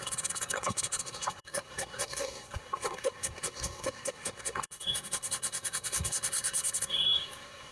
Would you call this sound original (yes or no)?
no